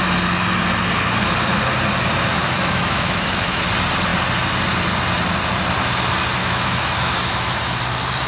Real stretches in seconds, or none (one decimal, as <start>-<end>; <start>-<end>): 0.0-2.4; 3.6-6.4; 7.8-8.3